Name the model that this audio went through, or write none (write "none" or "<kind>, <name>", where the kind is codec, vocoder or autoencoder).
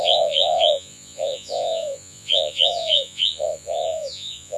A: vocoder, Vocos